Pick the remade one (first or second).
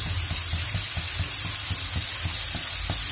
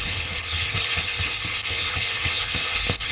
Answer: second